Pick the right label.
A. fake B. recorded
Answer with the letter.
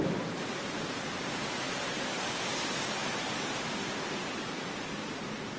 B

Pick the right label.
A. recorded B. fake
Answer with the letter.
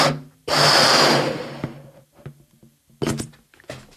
A